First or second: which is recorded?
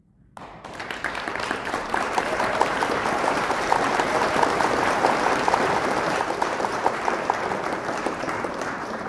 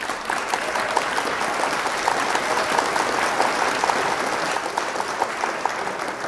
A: second